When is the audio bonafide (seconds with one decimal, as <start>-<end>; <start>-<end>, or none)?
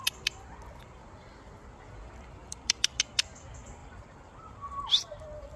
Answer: 0.0-2.4; 3.0-5.6